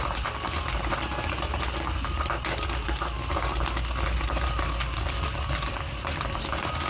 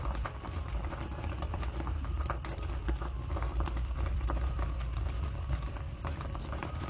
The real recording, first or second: first